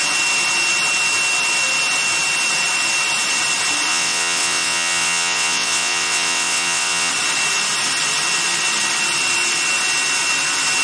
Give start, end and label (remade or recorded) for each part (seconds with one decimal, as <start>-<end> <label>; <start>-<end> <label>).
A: 0.0-3.9 recorded; 3.9-7.1 remade; 7.1-10.8 recorded